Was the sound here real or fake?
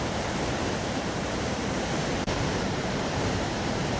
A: fake